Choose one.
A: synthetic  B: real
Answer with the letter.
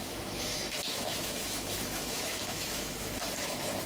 A